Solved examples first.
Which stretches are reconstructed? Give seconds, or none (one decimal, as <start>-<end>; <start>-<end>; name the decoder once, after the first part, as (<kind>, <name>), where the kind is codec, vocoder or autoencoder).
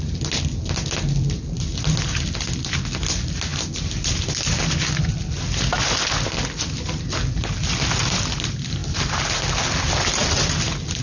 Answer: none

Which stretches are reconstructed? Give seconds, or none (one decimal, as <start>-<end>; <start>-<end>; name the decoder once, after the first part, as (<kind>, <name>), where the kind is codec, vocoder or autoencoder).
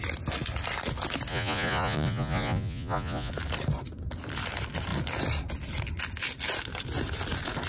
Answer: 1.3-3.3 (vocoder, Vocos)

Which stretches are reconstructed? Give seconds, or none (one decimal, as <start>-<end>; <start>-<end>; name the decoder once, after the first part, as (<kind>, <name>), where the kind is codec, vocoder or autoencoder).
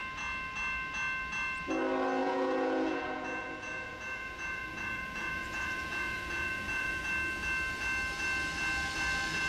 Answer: 2.2-7.0 (vocoder, Vocos)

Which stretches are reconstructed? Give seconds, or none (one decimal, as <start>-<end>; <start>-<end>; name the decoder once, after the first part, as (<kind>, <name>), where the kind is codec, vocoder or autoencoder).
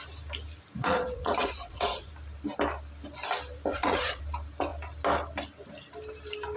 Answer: 0.8-2.1 (vocoder, Vocos); 3.7-4.2